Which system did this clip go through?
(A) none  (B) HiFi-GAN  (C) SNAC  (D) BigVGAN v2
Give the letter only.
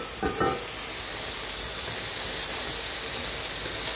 A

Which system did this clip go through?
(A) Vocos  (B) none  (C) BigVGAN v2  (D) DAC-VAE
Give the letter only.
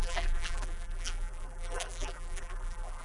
C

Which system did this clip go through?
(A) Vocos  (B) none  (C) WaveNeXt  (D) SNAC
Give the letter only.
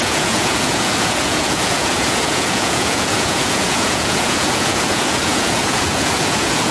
A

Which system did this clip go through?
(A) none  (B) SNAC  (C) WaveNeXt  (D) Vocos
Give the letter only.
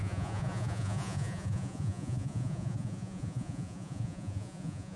D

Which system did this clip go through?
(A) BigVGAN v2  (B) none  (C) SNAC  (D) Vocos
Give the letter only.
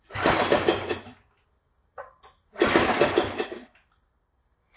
B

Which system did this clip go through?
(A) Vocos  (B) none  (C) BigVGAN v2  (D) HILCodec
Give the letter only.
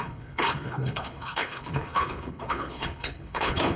D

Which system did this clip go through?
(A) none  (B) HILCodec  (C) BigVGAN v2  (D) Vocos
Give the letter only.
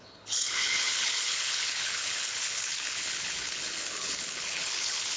B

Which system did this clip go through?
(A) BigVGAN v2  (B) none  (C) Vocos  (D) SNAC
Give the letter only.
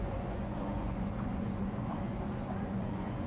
C